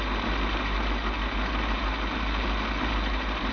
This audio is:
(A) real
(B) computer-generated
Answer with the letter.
A